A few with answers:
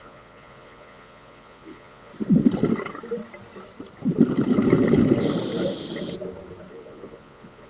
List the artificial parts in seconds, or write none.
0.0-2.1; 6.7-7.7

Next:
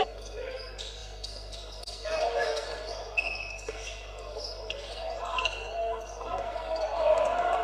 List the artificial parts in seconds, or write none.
0.0-7.6

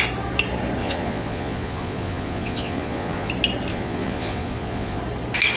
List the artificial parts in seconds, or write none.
0.8-3.3; 3.7-5.0